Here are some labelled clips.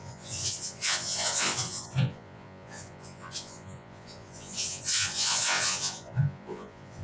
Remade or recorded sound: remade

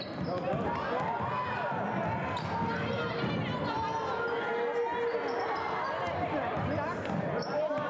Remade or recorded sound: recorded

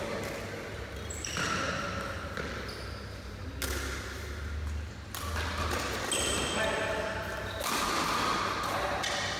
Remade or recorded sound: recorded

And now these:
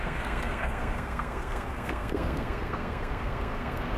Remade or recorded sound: remade